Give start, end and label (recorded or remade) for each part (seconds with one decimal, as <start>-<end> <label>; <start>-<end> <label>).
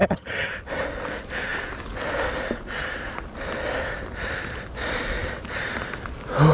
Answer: 0.0-0.5 remade; 0.5-6.5 recorded